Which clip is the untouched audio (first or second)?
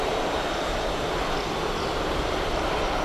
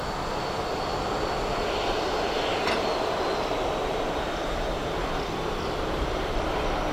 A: second